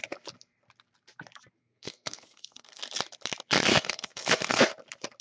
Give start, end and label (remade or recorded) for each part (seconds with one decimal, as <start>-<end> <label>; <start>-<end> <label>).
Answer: 0.0-1.6 recorded; 1.6-2.8 remade; 2.8-3.7 recorded; 3.7-4.7 remade; 4.7-5.2 recorded